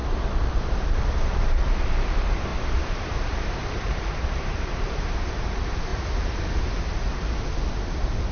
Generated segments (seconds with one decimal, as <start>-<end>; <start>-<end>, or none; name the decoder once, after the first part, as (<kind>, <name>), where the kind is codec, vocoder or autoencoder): 0.0-8.3 (vocoder, BigVGAN v2)